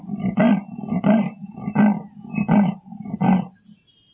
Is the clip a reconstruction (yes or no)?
no